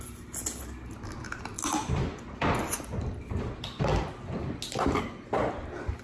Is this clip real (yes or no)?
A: yes